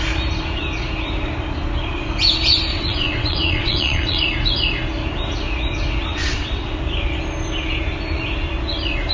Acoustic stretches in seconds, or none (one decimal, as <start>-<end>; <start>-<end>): 0.0-2.7; 4.2-6.1; 6.8-9.1